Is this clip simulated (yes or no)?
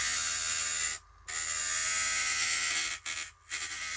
no